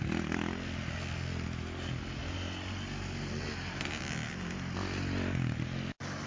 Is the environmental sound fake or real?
real